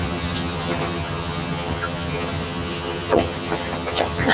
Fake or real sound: fake